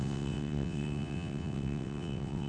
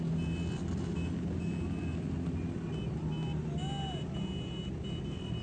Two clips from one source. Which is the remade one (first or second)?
first